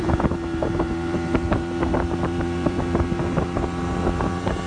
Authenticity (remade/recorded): remade